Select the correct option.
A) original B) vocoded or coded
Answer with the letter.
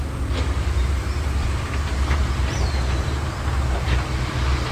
B